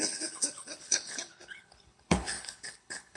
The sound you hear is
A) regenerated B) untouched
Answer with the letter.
A